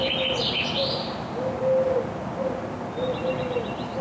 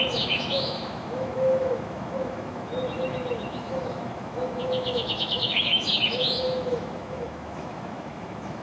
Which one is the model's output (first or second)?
second